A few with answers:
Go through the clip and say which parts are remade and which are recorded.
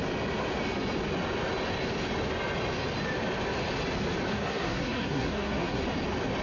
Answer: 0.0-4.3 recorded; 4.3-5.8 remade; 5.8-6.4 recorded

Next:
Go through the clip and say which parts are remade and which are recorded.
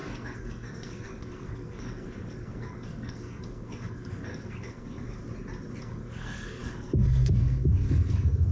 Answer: 0.0-5.2 remade; 5.2-5.8 recorded; 5.8-8.5 remade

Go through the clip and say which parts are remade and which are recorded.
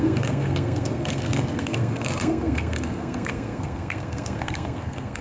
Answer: 0.0-5.2 remade